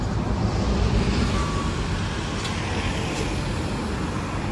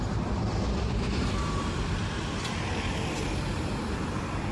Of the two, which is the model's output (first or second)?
second